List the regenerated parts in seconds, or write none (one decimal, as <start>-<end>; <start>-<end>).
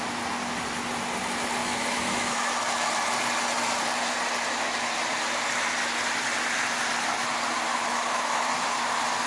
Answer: 1.6-2.5; 7.7-8.5